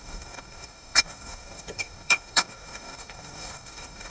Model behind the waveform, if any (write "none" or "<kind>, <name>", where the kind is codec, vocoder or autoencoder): codec, DAC